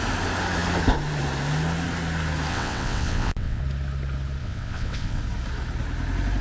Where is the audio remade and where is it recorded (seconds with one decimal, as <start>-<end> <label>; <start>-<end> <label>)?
0.0-2.5 recorded; 2.5-3.6 remade; 3.6-4.4 recorded; 4.4-5.2 remade; 5.2-6.4 recorded